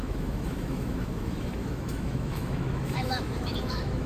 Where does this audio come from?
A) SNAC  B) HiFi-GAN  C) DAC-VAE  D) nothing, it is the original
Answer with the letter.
C